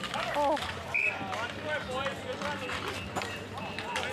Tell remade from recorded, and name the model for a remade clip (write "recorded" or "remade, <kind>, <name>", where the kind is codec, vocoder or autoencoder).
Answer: recorded